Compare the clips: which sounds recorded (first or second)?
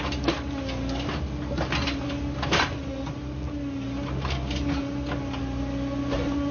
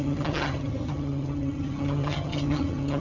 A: first